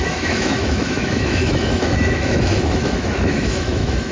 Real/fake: fake